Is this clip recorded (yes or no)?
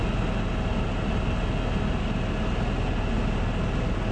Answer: yes